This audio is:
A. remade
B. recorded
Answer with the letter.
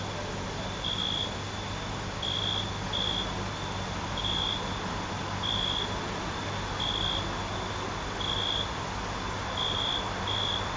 B